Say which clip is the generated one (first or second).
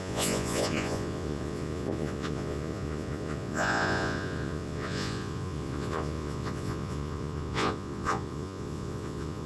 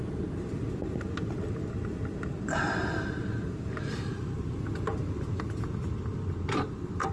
first